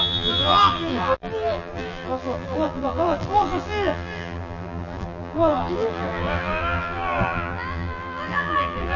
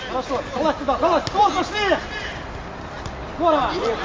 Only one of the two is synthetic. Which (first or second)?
first